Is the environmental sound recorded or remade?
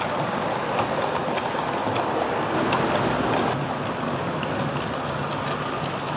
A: recorded